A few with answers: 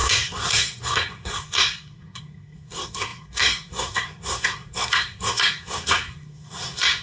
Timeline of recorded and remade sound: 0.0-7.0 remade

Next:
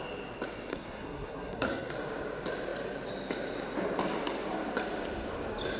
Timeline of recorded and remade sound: 0.0-0.7 recorded; 0.7-1.9 remade; 1.9-5.8 recorded

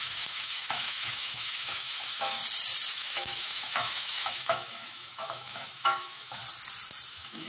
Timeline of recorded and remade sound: 0.0-2.4 remade; 2.4-2.9 recorded; 2.9-6.4 remade; 6.4-7.1 recorded; 7.1-7.5 remade

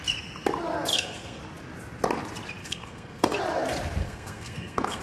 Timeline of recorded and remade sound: 0.0-0.9 recorded; 0.9-1.4 remade; 1.4-2.6 recorded; 2.6-3.4 remade; 3.4-4.0 recorded; 4.0-5.0 remade

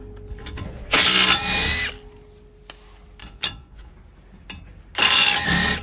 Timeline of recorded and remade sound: 0.0-0.4 recorded; 0.4-1.0 remade; 1.0-3.2 recorded; 3.2-3.9 remade; 3.9-5.8 recorded

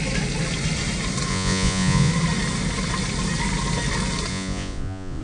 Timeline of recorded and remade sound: 0.0-1.3 recorded; 1.3-2.1 remade; 2.1-4.3 recorded; 4.3-5.2 remade